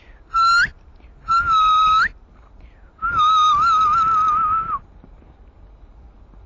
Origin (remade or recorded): recorded